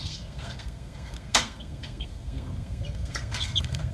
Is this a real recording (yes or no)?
no